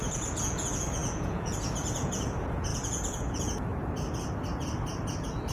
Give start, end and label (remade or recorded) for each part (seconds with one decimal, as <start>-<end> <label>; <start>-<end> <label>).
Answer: 0.0-3.7 remade; 3.7-4.6 recorded; 4.6-5.5 remade

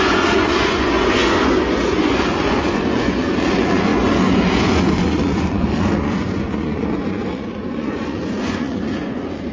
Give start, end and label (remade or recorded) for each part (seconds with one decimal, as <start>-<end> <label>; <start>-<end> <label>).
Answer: 0.0-9.5 remade